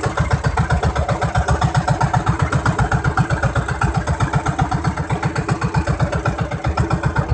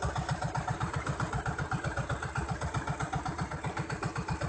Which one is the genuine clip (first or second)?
first